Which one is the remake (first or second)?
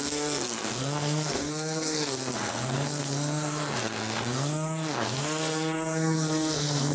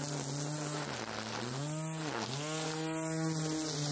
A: first